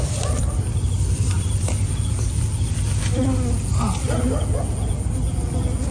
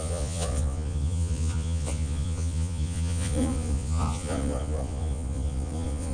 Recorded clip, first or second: first